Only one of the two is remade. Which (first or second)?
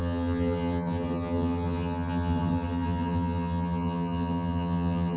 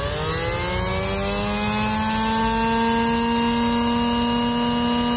first